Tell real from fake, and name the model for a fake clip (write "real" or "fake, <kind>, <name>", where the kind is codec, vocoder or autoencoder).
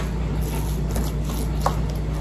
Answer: real